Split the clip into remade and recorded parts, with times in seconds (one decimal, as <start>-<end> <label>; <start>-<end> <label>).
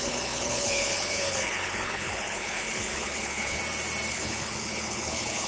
0.0-3.6 remade; 3.6-4.1 recorded; 4.1-5.5 remade